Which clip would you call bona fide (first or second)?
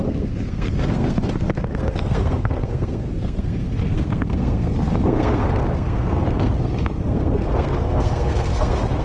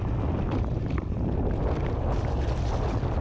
second